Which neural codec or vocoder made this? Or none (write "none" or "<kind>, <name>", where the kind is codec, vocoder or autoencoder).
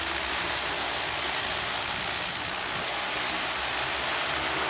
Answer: none